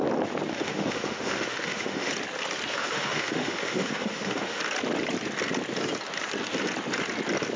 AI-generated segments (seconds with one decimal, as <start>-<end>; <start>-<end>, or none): 0.5-2.1; 2.7-4.6